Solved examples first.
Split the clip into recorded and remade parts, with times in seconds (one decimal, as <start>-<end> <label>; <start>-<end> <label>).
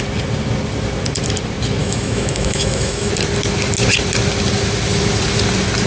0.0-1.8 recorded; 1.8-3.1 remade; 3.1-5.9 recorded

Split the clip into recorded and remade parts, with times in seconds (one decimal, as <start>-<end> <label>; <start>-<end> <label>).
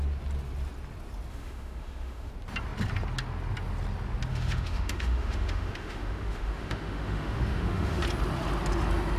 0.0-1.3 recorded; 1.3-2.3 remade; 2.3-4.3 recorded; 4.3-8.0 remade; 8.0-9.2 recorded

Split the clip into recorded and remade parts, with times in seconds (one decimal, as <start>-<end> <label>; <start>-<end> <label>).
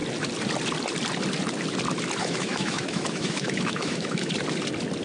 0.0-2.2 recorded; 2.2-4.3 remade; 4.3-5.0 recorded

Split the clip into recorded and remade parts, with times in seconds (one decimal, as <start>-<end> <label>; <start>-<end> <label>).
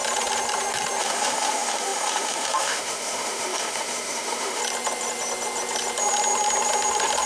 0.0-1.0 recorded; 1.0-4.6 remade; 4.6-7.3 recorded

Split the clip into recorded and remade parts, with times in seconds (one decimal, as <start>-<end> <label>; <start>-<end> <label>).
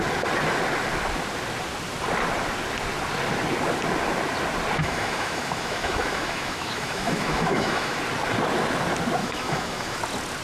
0.0-4.8 recorded; 4.8-8.0 remade; 8.0-9.2 recorded; 9.2-10.0 remade; 10.0-10.4 recorded